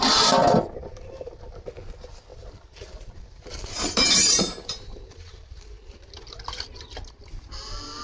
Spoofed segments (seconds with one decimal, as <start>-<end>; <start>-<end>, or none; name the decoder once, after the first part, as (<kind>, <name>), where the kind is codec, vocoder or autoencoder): 2.3-6.1 (vocoder, BigVGAN v2)